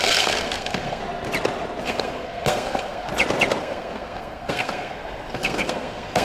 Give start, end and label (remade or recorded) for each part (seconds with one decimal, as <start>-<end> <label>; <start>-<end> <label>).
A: 0.0-1.0 remade; 1.0-1.8 recorded; 1.8-3.1 remade; 3.1-3.6 recorded; 3.6-6.2 remade